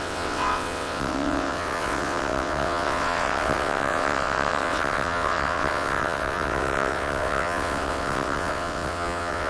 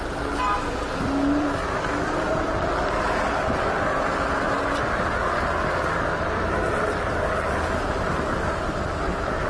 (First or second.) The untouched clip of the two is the second